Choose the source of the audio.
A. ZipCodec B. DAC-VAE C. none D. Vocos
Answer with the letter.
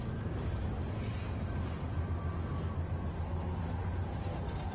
C